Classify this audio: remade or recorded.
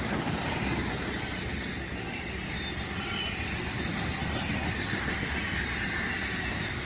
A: recorded